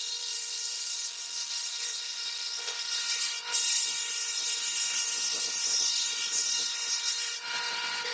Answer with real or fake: fake